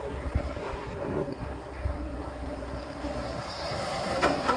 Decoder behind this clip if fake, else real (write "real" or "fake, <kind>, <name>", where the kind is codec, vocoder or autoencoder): fake, codec, SNAC